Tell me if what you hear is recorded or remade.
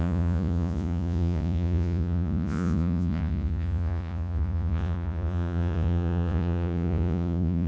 remade